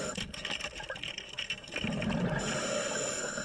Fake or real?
real